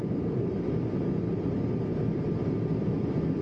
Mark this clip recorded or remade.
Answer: recorded